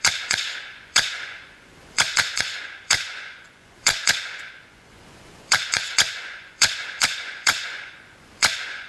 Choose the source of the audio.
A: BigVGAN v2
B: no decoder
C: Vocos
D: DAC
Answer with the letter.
C